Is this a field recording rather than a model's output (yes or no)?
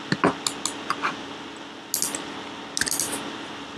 yes